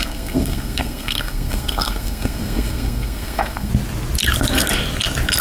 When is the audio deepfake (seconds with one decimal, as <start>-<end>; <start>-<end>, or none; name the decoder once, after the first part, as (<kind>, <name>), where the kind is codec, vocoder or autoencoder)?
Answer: 0.0-3.7 (codec, SNAC)

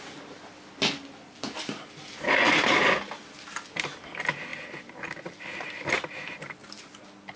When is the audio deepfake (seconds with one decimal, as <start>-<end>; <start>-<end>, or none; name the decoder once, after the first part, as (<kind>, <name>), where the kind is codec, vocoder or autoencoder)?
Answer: none

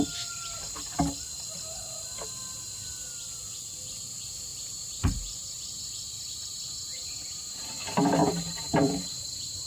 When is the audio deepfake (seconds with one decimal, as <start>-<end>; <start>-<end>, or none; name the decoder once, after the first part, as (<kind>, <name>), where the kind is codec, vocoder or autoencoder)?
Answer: 4.5-5.8 (vocoder, BigVGAN v2); 8.2-9.7

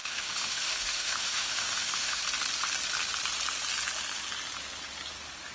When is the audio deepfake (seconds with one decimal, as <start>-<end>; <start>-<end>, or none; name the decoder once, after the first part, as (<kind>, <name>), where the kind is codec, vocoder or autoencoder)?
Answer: 0.0-2.2 (autoencoder, DAC-VAE)

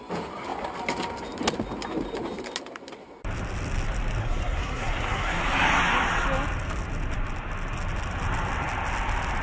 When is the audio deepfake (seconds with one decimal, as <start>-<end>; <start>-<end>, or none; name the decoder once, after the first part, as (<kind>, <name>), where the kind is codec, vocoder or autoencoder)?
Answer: 4.2-5.4 (codec, SNAC)

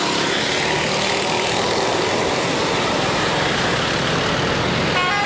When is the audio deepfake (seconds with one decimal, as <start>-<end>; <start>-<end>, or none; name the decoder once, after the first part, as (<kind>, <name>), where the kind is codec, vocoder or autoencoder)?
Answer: none